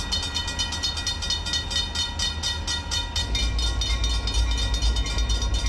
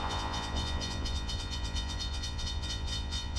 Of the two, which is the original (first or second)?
first